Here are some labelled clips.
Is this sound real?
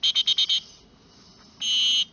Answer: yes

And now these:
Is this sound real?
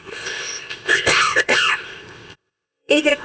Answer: no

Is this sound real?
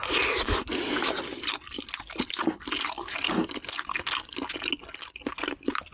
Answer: yes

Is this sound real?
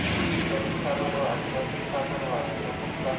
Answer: yes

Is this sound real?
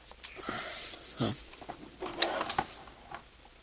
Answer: yes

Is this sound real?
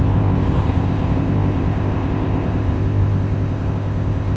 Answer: no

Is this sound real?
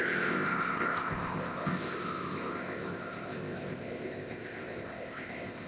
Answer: no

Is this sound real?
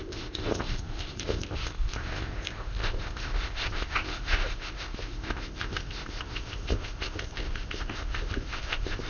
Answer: no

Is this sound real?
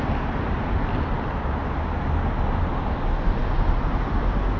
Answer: yes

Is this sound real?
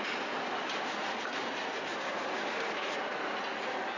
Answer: yes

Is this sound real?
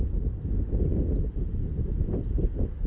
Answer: yes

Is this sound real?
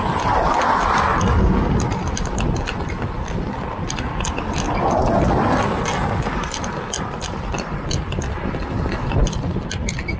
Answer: yes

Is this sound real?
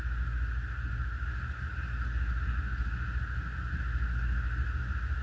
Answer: yes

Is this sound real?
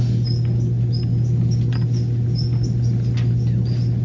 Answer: yes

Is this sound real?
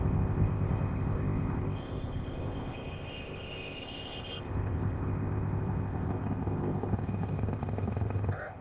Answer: no